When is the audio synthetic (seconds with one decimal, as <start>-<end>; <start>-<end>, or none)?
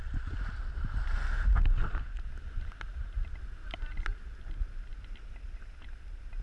none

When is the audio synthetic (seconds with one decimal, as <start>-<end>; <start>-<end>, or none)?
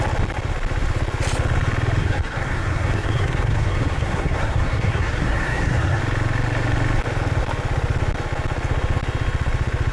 2.0-6.0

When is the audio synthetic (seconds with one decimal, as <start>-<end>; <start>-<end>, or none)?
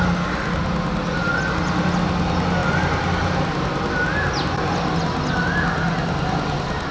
none